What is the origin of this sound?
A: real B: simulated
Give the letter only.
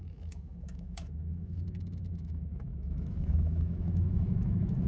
B